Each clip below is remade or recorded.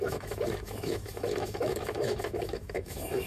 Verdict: remade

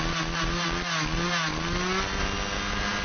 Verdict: recorded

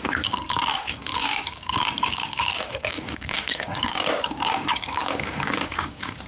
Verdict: remade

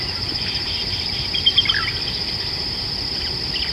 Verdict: remade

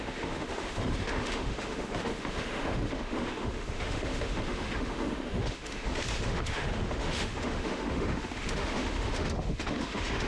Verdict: remade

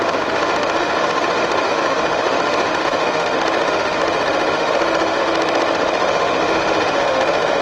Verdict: remade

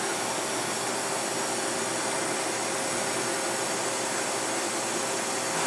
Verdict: recorded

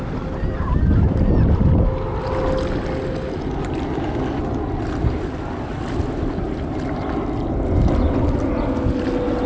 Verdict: recorded